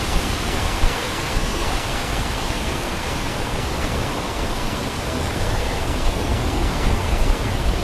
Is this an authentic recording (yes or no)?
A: no